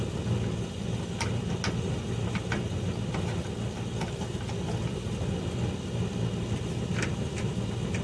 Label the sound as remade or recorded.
recorded